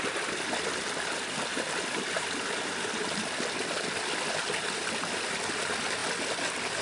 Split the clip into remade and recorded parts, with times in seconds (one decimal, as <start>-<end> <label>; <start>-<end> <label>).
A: 0.0-6.8 recorded